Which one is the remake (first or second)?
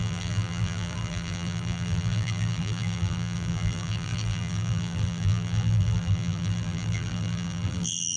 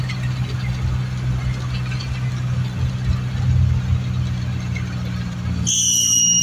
first